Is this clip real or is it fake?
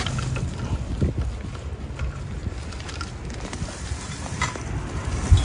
real